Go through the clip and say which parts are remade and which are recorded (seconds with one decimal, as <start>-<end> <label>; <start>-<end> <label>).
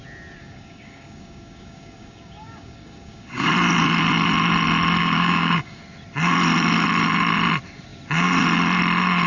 0.0-0.4 recorded; 0.4-3.5 remade; 3.5-5.0 recorded; 5.0-5.8 remade; 5.8-9.3 recorded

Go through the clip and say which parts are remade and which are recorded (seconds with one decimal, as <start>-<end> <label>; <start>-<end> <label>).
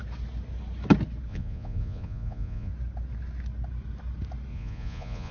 0.0-1.3 recorded; 1.3-2.7 remade; 2.7-4.5 recorded; 4.5-5.3 remade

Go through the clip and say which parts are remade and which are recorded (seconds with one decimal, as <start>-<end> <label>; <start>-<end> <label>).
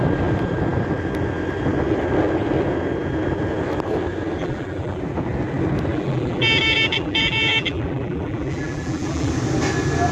0.0-4.4 recorded; 4.4-5.0 remade; 5.0-5.9 recorded; 5.9-9.3 remade; 9.3-10.1 recorded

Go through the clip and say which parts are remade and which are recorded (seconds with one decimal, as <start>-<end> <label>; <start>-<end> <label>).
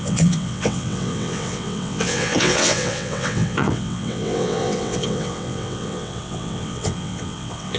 0.0-7.8 remade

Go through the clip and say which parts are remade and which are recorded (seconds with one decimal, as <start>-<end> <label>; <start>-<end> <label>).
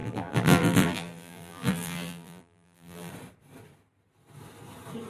0.0-3.1 remade; 3.1-5.1 recorded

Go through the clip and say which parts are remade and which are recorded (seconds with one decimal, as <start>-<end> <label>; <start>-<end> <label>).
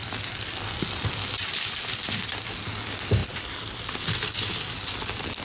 0.0-5.4 recorded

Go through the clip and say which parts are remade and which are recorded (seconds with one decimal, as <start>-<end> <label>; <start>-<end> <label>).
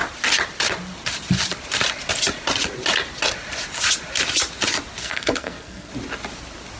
0.0-5.0 recorded; 5.0-5.9 remade; 5.9-6.8 recorded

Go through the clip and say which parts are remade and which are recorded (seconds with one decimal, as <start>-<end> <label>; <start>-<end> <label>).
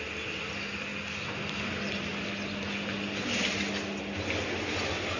0.0-5.2 recorded